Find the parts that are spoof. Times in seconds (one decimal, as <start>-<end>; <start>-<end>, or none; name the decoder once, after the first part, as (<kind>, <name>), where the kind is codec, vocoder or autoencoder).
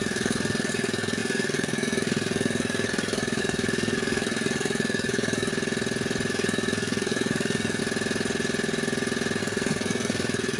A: 0.0-5.5 (codec, SNAC); 6.3-7.8; 9.4-10.6